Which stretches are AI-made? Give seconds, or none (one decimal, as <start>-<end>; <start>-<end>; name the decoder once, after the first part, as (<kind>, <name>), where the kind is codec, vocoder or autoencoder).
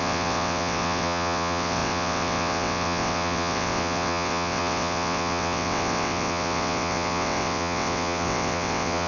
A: 0.0-9.1 (vocoder, WaveNeXt)